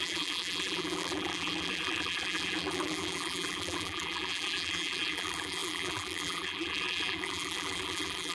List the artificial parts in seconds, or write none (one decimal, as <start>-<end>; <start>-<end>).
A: 0.0-8.3

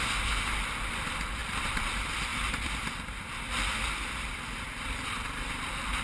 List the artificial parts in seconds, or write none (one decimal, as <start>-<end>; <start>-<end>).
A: 1.4-1.9; 2.3-6.0

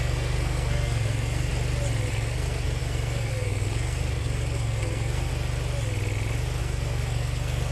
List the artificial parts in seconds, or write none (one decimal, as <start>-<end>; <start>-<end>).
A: 0.0-1.5; 2.1-5.3; 6.6-7.7

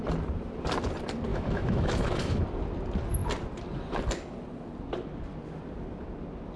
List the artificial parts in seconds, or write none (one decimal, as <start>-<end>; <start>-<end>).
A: 1.3-2.4

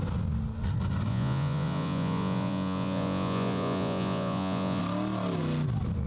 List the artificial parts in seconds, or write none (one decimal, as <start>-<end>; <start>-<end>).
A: 1.1-4.8